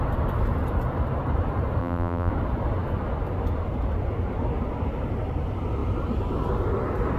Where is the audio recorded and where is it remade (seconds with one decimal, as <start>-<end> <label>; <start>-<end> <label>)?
0.0-1.8 recorded; 1.8-2.3 remade; 2.3-7.2 recorded